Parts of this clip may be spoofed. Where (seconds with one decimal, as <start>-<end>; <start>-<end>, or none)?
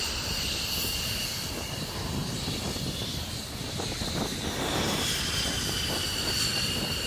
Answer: none